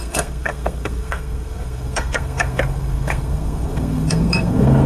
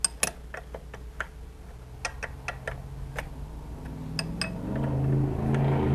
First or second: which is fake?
first